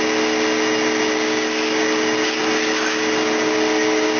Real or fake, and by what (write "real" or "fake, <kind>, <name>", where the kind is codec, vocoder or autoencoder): real